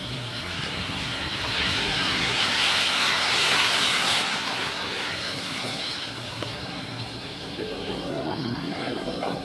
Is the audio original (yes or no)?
no